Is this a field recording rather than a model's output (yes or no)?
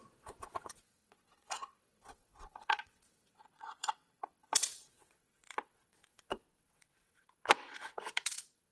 no